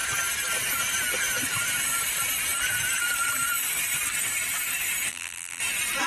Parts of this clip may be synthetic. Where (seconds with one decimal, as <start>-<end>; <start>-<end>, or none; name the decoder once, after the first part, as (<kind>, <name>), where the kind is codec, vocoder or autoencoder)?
5.1-5.6 (vocoder, BigVGAN v2)